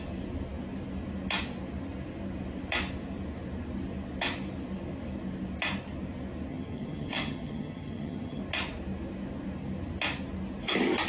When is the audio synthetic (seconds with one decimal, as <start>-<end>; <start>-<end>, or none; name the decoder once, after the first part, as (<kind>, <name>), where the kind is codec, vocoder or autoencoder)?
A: 6.5-8.4 (vocoder, HiFi-GAN)